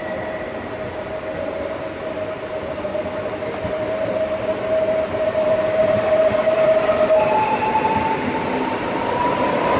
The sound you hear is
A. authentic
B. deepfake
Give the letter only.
B